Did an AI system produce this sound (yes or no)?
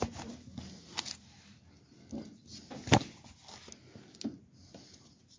no